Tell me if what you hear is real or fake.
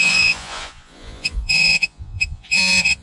fake